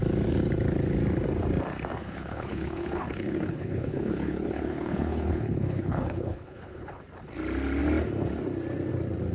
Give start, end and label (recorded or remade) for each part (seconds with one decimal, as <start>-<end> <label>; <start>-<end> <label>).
0.0-2.0 recorded; 2.0-7.0 remade; 7.0-9.3 recorded